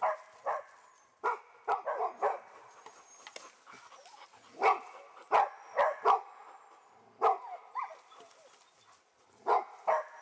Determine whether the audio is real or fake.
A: real